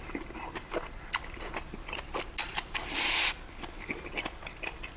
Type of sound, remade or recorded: recorded